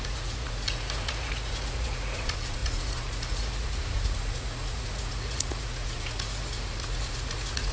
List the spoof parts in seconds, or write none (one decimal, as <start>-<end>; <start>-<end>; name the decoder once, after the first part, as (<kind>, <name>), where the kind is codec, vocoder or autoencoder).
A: 0.0-7.7 (vocoder, Vocos)